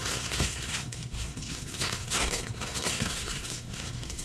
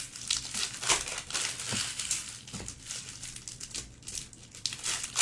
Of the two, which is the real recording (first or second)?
second